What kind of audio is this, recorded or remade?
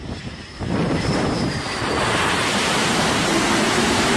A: remade